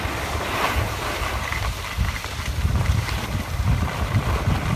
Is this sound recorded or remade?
recorded